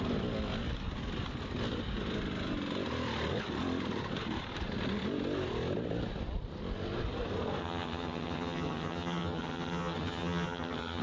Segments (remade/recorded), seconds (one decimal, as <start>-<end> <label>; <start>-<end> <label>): 0.0-7.6 recorded; 7.6-11.0 remade